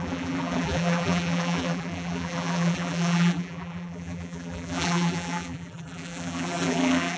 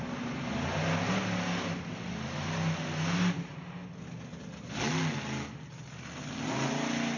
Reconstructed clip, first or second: first